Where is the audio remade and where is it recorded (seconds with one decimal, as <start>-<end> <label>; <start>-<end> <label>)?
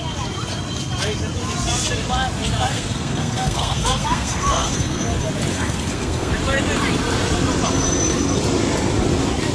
0.0-2.7 recorded; 2.7-5.1 remade; 5.1-5.5 recorded; 5.5-6.3 remade; 6.3-9.5 recorded